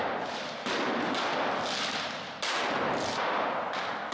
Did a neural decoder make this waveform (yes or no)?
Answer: no